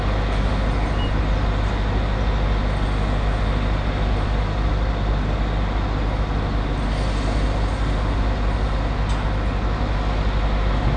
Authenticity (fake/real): real